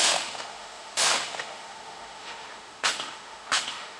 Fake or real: fake